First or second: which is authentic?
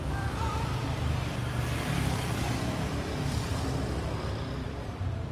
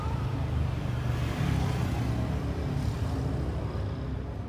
second